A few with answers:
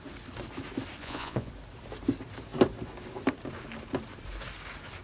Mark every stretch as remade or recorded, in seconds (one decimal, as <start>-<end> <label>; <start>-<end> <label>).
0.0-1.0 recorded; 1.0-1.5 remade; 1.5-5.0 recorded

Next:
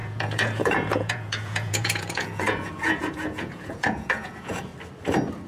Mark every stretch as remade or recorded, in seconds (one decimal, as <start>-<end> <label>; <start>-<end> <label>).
0.0-4.7 remade; 4.7-5.5 recorded

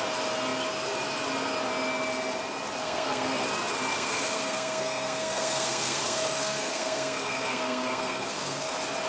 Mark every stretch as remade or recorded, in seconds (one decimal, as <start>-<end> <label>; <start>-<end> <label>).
0.0-2.8 recorded; 2.8-3.4 remade; 3.4-3.9 recorded; 3.9-8.7 remade; 8.7-9.1 recorded

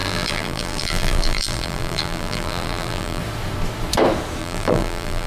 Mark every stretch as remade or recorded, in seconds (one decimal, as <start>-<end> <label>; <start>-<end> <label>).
0.0-3.2 remade; 3.2-4.4 recorded; 4.4-5.3 remade

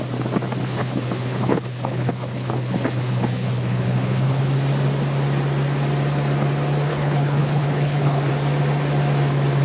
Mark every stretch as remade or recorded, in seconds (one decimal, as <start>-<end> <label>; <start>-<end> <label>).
0.0-0.6 recorded; 0.6-4.5 remade; 4.5-6.9 recorded; 6.9-8.3 remade; 8.3-9.6 recorded

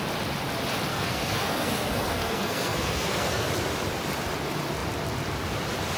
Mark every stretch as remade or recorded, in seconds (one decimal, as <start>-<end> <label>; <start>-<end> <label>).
0.0-0.9 recorded; 0.9-3.5 remade; 3.5-6.0 recorded

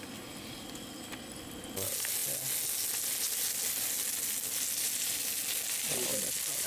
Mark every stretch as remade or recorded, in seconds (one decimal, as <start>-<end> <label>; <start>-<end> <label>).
0.0-6.7 recorded